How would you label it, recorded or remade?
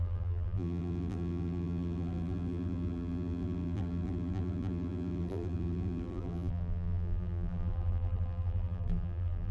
remade